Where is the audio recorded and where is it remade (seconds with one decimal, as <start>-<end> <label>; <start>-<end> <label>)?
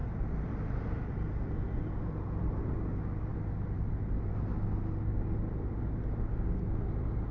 0.0-7.3 recorded